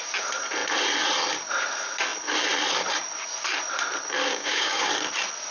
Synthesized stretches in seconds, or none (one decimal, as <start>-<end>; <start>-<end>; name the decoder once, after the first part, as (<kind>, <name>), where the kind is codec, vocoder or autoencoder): 4.3-4.9 (codec, DAC)